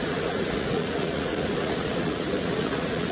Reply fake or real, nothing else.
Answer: fake